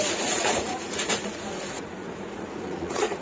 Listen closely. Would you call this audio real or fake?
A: fake